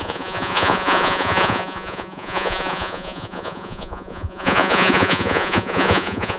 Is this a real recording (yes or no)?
no